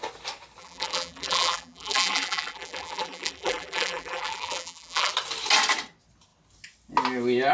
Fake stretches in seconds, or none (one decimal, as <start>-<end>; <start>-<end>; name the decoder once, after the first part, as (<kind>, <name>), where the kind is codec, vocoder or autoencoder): 0.6-5.1 (vocoder, BigVGAN v2)